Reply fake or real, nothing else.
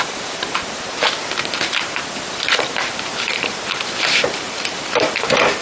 fake